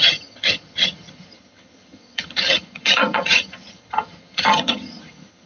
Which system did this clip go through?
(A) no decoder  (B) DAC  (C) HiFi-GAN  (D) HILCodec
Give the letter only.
C